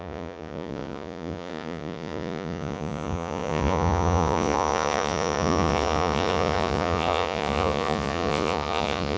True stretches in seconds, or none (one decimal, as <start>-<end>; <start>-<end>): none